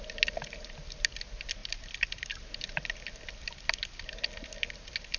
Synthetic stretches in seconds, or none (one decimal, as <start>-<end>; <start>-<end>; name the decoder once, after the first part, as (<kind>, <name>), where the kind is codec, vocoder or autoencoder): none